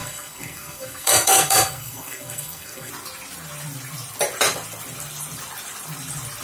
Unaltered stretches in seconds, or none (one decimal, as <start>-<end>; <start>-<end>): 2.9-6.4